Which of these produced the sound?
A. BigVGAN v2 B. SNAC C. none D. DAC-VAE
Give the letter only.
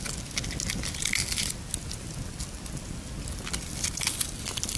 C